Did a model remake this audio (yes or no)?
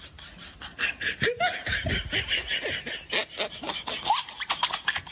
no